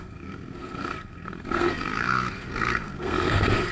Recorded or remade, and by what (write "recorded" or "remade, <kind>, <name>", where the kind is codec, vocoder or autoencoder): remade, codec, SNAC